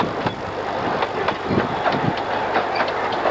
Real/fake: real